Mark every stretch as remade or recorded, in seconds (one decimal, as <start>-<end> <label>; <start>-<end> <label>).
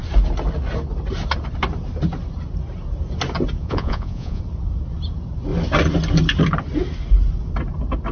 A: 0.0-3.6 recorded; 3.6-4.4 remade; 4.4-8.1 recorded